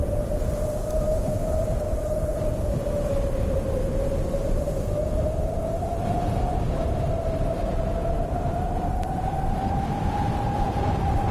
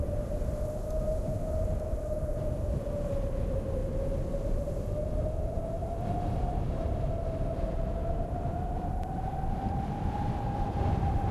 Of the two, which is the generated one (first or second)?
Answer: first